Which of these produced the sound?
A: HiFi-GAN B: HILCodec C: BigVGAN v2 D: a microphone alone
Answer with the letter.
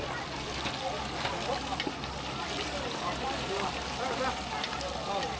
D